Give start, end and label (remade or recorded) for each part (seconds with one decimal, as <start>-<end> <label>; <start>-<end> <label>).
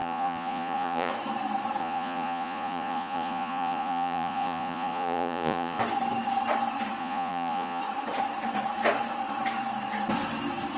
0.0-1.1 remade; 1.1-1.8 recorded; 1.8-5.8 remade; 5.8-7.0 recorded; 7.0-7.8 remade; 7.8-10.8 recorded